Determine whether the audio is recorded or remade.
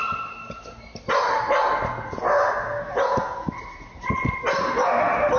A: recorded